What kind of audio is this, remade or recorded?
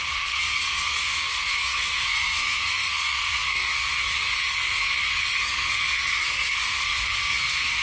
remade